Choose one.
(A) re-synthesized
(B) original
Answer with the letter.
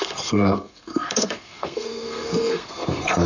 A